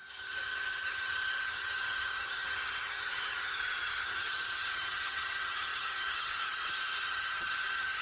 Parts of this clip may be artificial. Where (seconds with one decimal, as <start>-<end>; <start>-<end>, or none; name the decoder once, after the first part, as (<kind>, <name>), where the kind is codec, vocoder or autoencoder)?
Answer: 0.0-8.0 (vocoder, HiFi-GAN)